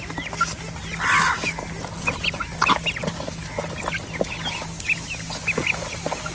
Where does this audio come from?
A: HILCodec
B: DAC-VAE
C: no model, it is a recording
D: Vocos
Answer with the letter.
C